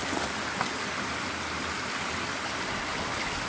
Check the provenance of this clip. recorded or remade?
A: recorded